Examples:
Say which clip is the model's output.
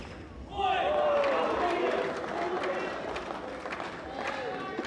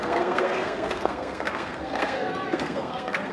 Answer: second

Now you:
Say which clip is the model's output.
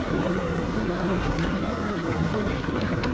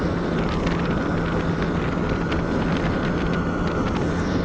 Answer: first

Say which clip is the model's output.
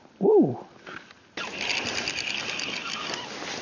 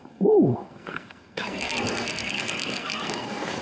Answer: second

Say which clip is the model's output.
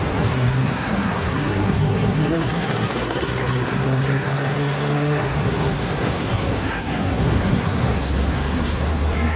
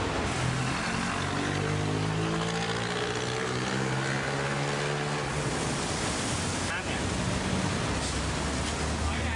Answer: first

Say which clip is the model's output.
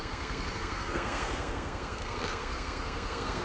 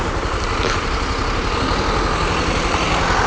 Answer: first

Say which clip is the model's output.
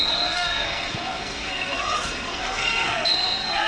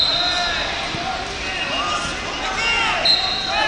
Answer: first